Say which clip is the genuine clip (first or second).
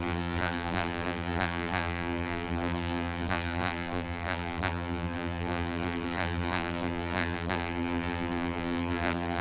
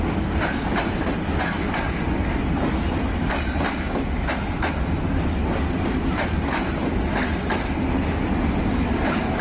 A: second